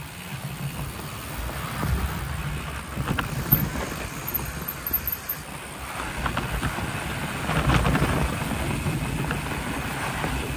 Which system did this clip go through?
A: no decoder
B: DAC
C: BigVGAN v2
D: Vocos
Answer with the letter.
A